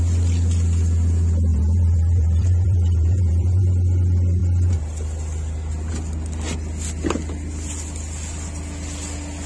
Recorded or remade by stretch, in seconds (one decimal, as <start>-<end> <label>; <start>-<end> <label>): 0.0-1.5 recorded; 1.5-3.7 remade; 3.7-9.5 recorded